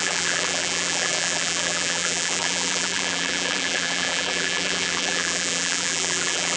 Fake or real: fake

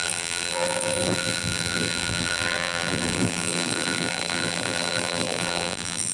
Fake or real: fake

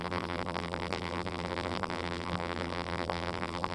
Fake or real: fake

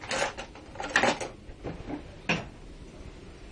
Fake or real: real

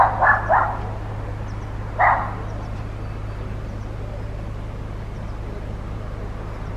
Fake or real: real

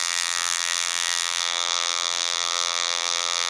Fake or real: fake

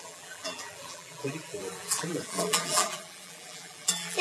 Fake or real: fake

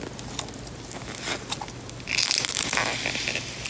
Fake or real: real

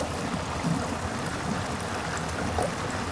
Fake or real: real